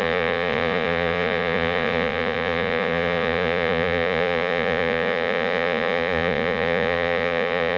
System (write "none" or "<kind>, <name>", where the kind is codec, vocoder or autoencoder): vocoder, Vocos